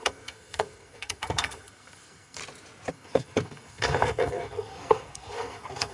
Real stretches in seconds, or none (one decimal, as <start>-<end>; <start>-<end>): 2.4-2.9